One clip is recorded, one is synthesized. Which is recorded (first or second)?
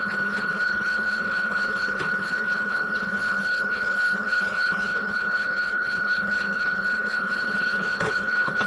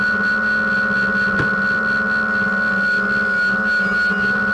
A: second